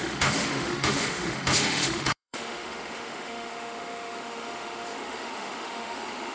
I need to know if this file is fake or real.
fake